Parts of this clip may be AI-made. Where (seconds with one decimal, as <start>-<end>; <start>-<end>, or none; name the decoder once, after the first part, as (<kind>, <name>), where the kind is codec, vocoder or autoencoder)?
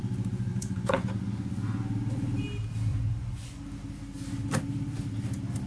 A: 0.5-1.1 (vocoder, Vocos); 2.9-3.6